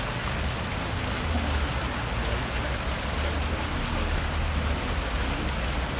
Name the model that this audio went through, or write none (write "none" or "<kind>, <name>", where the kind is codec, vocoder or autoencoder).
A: none